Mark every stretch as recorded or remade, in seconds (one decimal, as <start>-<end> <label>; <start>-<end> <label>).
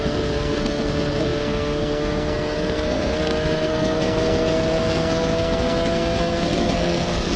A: 0.0-7.4 remade